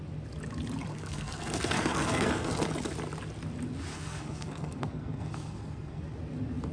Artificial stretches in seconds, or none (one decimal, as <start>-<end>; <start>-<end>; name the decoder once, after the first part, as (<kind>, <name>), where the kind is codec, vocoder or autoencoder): 0.9-2.7 (codec, SNAC); 3.9-6.0